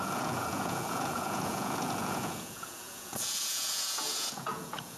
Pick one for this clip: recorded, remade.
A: remade